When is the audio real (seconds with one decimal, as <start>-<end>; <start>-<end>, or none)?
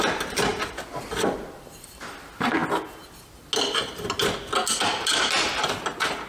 0.0-0.5; 2.0-5.1; 5.6-6.3